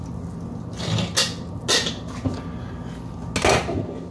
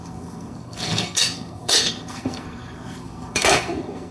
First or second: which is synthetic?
second